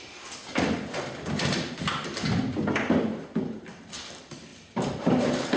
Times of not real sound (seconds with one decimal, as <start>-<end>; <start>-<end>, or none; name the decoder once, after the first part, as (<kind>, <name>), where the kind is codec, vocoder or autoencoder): none